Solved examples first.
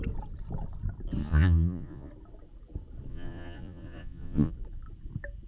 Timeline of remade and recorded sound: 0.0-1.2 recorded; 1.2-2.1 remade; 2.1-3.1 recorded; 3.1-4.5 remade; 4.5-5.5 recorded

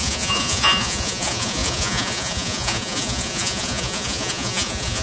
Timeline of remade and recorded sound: 0.0-5.0 remade

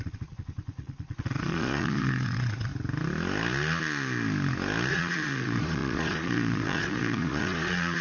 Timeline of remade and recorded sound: 0.0-2.7 remade; 2.7-4.9 recorded; 4.9-8.0 remade

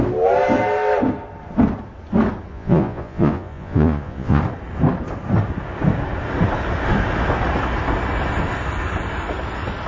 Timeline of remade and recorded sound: 0.0-2.5 recorded; 2.5-4.4 remade; 4.4-9.9 recorded